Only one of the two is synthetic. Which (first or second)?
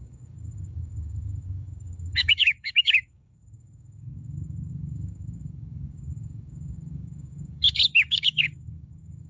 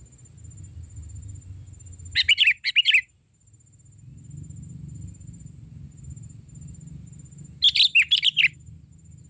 first